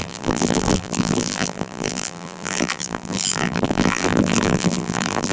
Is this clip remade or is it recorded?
remade